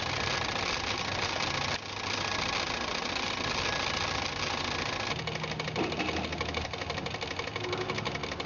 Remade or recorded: recorded